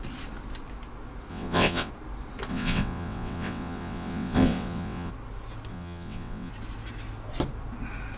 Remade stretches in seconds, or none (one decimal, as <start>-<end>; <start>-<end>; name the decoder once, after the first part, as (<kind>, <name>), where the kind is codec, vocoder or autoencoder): 1.3-1.9 (vocoder, WaveNeXt); 2.5-5.1; 5.7-6.5